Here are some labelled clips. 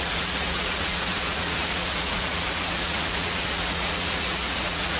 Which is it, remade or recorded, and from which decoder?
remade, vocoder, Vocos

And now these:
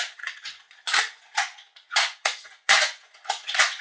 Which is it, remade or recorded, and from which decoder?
remade, vocoder, Vocos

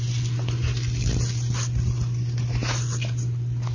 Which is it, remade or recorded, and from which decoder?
recorded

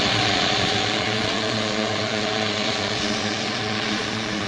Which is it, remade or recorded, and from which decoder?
remade, vocoder, Vocos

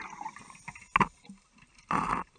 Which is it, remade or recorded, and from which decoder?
recorded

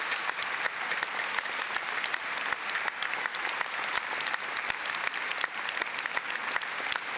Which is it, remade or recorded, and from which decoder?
recorded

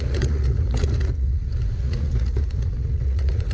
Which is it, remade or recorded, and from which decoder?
remade, vocoder, Vocos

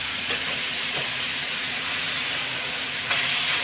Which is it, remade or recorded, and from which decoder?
remade, vocoder, Vocos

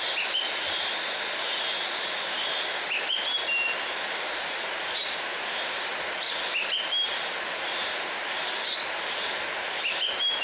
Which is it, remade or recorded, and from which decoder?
recorded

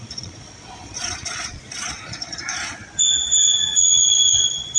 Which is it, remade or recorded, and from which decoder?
remade, vocoder, Vocos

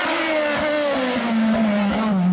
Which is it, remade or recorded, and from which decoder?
recorded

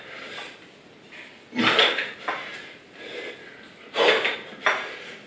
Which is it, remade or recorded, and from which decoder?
recorded